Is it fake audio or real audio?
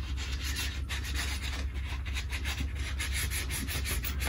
real